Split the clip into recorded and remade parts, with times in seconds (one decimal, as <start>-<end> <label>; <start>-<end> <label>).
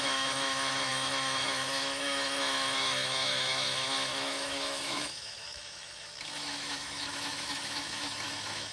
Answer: 0.0-8.7 remade